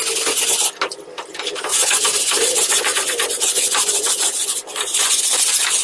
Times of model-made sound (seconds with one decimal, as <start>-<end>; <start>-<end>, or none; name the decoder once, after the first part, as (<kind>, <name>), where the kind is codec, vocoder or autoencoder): 1.7-5.2 (vocoder, Vocos)